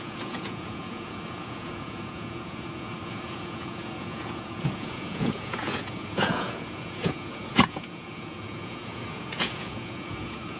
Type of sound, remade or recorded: remade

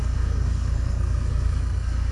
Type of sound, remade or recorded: remade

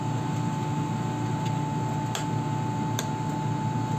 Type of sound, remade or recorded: recorded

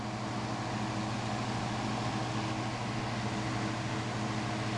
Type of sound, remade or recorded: recorded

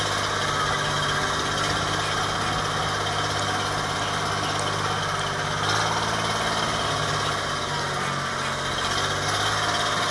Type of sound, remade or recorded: recorded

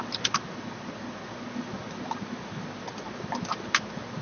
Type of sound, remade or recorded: recorded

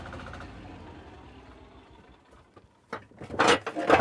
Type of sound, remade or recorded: recorded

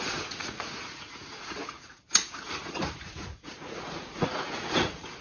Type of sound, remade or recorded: remade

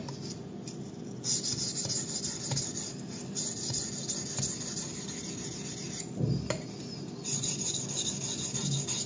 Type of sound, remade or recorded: recorded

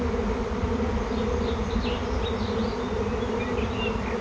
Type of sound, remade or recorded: recorded